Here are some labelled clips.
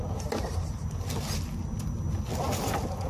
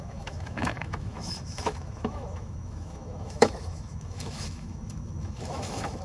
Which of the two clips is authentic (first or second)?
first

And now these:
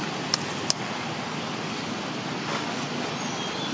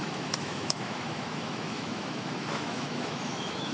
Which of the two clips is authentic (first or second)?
first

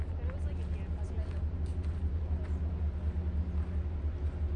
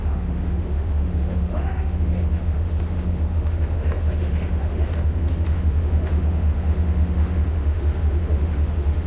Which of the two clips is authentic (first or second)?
first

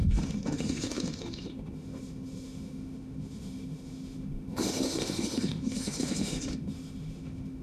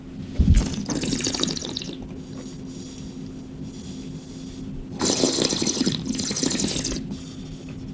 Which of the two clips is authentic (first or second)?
second